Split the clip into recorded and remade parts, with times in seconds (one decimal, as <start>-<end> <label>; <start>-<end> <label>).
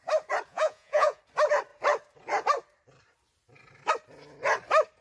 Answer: 0.0-0.5 recorded; 0.5-1.2 remade; 1.2-5.0 recorded